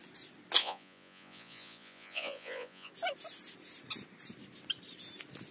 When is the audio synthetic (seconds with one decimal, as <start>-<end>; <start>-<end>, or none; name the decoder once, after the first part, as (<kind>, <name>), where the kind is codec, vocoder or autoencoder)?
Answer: 0.6-2.9 (vocoder, Vocos)